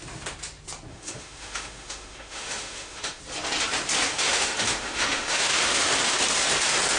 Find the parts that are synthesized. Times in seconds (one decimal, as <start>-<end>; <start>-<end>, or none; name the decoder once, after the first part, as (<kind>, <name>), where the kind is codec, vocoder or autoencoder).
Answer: 0.9-3.2 (autoencoder, DAC-VAE); 4.1-5.9